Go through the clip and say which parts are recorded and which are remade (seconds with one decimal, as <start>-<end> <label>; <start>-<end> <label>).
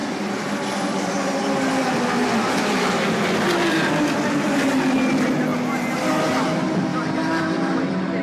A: 0.0-4.7 remade; 4.7-6.9 recorded; 6.9-8.2 remade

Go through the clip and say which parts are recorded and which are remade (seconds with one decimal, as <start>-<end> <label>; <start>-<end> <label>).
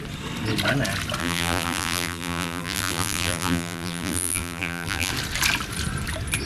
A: 0.0-1.2 recorded; 1.2-5.1 remade; 5.1-6.5 recorded